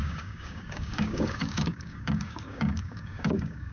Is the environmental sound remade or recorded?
remade